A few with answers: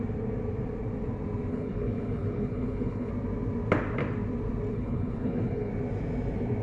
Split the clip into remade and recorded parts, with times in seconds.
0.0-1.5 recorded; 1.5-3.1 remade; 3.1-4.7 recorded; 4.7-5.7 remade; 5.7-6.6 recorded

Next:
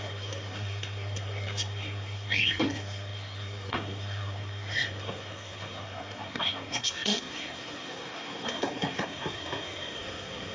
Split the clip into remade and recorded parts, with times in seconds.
0.0-10.5 remade